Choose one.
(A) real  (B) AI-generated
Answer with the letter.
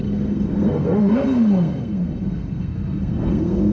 B